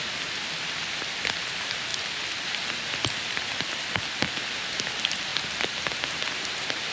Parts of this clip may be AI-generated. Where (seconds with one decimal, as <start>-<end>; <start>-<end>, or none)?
none